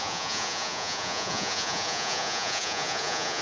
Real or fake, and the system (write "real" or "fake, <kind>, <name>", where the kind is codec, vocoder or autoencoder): fake, vocoder, Vocos